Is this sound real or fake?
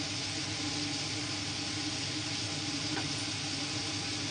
real